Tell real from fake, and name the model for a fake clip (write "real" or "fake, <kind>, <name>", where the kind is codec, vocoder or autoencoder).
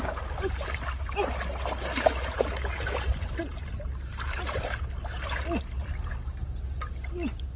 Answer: real